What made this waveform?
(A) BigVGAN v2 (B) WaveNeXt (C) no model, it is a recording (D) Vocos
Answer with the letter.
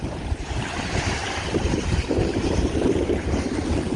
A